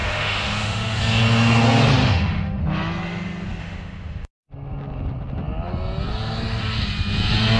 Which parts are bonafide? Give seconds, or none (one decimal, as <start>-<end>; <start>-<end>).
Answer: 1.0-2.0; 2.6-3.6; 4.3-7.6